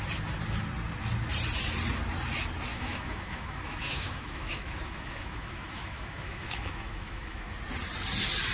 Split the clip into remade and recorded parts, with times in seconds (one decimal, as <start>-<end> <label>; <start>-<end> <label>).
0.0-2.7 recorded; 2.7-7.6 remade; 7.6-8.5 recorded